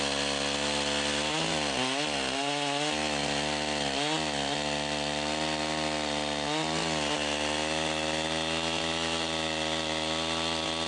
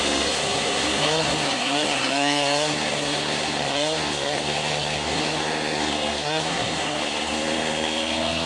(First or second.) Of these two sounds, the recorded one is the first